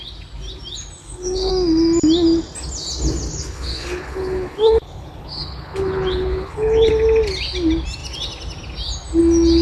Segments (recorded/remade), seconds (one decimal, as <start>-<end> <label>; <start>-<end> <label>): 0.0-1.0 recorded; 1.0-1.5 remade; 1.5-3.3 recorded; 3.3-6.9 remade; 6.9-9.6 recorded